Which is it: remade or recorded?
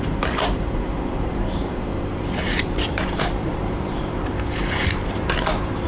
remade